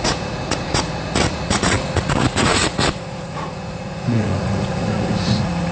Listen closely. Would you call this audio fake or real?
fake